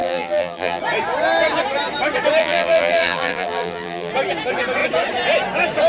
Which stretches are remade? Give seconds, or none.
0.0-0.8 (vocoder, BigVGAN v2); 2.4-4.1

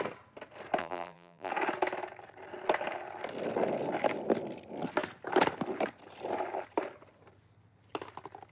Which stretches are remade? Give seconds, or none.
0.8-1.5 (vocoder, BigVGAN v2)

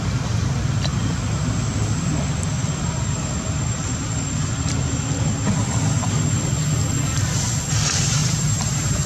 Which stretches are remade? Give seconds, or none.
8.2-9.1 (vocoder, BigVGAN v2)

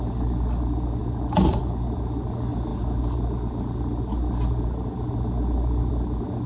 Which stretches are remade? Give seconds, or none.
none

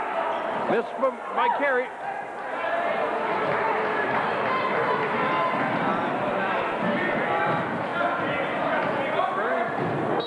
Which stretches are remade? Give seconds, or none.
5.9-7.4 (vocoder, BigVGAN v2)

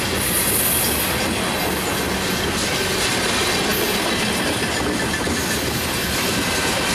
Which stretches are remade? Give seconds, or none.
3.7-6.9 (vocoder, BigVGAN v2)

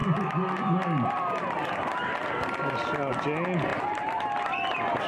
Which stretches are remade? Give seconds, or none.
3.7-4.2 (vocoder, BigVGAN v2)

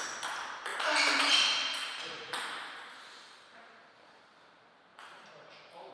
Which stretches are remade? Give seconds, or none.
0.7-4.2 (vocoder, BigVGAN v2); 4.9-5.9